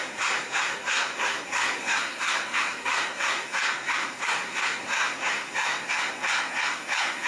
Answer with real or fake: fake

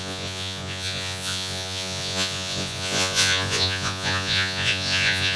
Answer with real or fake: fake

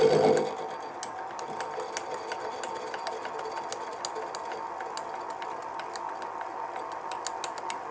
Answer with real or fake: real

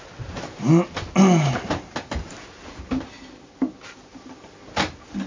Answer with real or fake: real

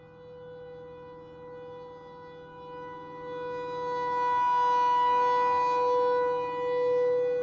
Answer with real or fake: real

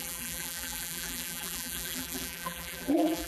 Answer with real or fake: fake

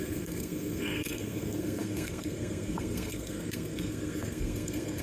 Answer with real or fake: fake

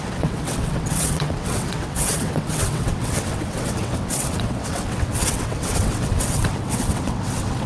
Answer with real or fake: fake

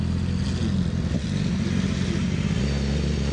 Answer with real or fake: real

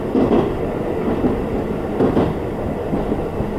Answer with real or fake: real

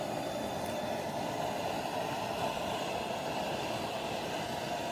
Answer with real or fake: fake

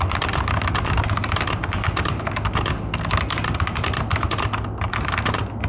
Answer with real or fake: real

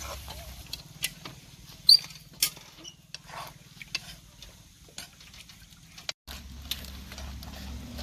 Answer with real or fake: real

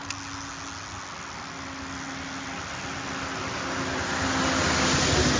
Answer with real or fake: real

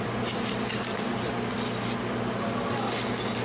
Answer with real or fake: real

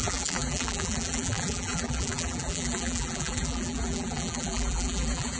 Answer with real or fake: fake